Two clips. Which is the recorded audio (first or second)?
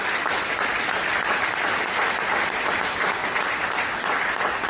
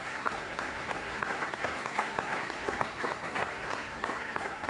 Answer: first